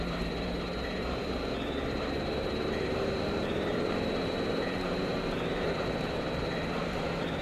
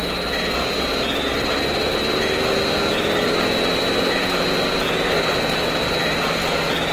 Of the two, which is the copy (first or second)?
first